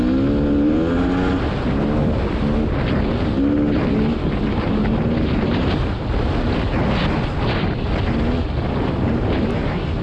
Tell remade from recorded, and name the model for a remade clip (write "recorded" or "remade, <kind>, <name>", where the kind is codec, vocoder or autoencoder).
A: recorded